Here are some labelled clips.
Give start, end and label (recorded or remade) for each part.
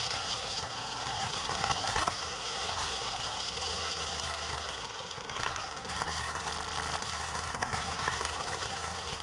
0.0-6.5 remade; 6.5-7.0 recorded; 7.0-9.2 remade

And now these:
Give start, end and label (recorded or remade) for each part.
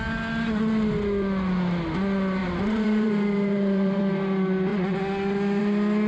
0.0-2.4 recorded; 2.4-4.0 remade; 4.0-6.1 recorded